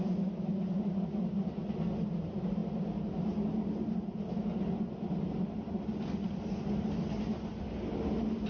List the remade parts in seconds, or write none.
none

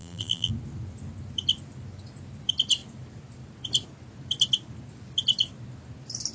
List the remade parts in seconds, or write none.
0.0-0.5 (vocoder, BigVGAN v2)

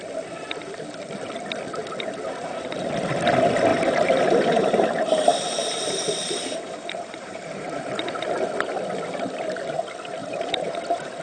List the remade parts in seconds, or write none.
1.8-2.9 (vocoder, BigVGAN v2); 3.7-8.3; 10.2-11.2

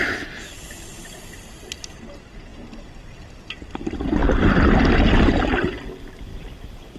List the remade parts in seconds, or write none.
none

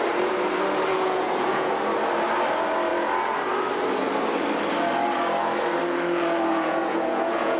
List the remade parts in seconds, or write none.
0.9-1.7 (vocoder, Vocos); 6.5-7.6